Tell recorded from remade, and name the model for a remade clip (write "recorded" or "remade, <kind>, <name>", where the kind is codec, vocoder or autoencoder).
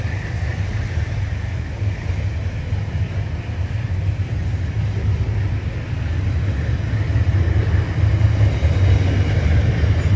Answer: recorded